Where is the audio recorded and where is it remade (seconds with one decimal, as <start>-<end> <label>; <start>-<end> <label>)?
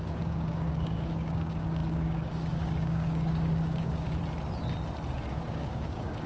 0.0-4.2 remade; 4.2-5.3 recorded; 5.3-6.3 remade